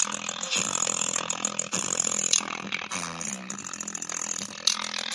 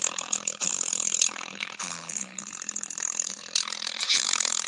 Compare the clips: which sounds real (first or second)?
first